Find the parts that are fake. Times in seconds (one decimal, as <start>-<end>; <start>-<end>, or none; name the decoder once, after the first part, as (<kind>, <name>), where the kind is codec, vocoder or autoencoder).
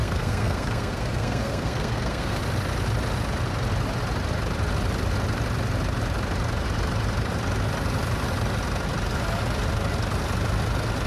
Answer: 0.0-2.4 (codec, SNAC)